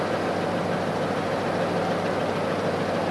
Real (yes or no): yes